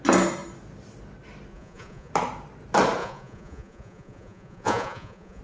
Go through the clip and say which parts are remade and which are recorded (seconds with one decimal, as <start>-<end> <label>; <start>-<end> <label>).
0.0-1.5 recorded; 1.5-2.1 remade; 2.1-3.0 recorded; 3.0-5.4 remade